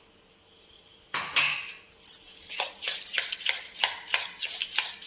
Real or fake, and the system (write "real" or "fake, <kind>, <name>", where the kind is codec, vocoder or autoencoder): real